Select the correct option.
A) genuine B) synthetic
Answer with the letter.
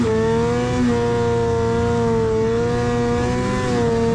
A